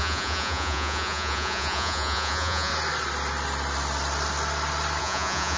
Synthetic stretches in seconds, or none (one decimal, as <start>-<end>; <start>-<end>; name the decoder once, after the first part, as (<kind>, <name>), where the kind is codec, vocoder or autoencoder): 0.0-2.7 (vocoder, Vocos); 5.0-5.6